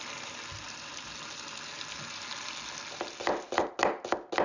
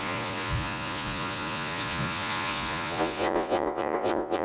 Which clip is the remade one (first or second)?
second